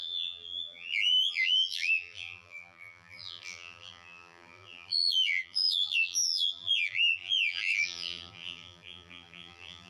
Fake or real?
fake